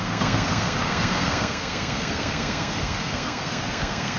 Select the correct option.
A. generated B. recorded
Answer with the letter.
A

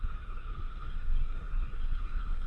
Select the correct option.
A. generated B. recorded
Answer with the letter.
A